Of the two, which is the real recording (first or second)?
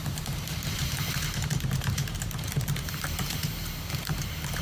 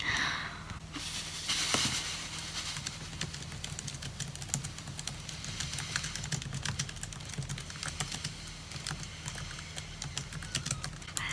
second